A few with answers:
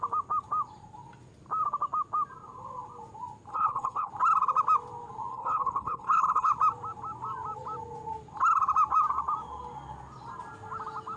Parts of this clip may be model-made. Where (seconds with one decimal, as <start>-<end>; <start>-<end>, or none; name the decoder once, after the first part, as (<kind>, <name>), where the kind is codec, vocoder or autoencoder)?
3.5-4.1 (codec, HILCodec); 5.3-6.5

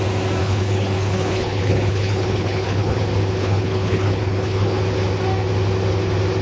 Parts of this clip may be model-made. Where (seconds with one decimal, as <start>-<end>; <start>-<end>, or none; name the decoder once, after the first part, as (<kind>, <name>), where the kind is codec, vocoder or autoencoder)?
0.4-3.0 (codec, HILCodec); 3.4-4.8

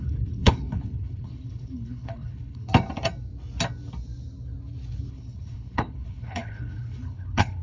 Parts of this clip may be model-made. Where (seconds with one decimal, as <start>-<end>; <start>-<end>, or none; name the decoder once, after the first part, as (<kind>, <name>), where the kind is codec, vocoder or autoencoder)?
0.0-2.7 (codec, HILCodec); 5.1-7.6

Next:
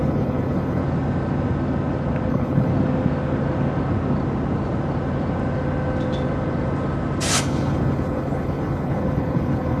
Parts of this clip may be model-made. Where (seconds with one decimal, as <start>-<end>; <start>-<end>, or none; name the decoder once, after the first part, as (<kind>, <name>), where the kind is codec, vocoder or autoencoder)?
0.0-0.8 (codec, HILCodec); 2.3-2.7; 7.4-9.8

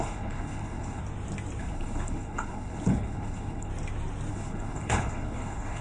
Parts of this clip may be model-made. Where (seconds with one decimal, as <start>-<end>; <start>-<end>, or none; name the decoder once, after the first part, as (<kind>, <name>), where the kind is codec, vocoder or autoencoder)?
0.0-1.0 (codec, HILCodec); 1.6-3.7; 4.3-5.8

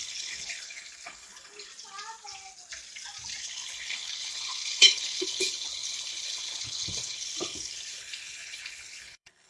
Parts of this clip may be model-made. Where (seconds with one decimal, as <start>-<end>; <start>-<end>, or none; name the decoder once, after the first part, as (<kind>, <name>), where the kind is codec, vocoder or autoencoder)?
0.0-1.7 (codec, HILCodec); 3.4-9.5